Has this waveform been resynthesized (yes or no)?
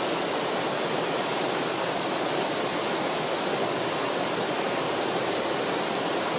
no